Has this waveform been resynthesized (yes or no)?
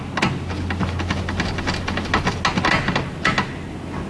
no